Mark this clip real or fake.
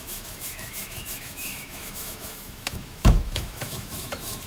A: fake